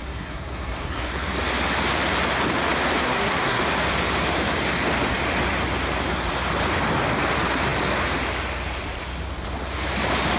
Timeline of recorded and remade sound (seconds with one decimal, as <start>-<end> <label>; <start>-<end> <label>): 0.0-1.1 remade; 1.1-3.0 recorded; 3.0-3.6 remade; 3.6-10.4 recorded